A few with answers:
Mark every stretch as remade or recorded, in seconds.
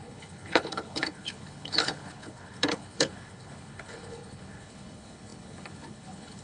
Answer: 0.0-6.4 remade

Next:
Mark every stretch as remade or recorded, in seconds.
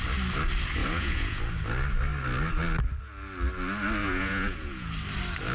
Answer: 0.0-0.8 recorded; 0.8-1.4 remade; 1.4-4.0 recorded; 4.0-4.9 remade; 4.9-5.5 recorded